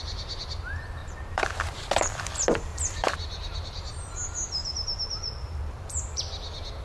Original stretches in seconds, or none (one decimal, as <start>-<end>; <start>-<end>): 0.0-1.0; 2.3-2.7; 3.9-4.6; 6.2-6.8